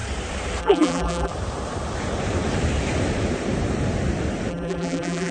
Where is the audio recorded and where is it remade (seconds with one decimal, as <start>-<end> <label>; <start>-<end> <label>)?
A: 0.0-0.6 recorded; 0.6-1.3 remade; 1.3-4.5 recorded; 4.5-5.3 remade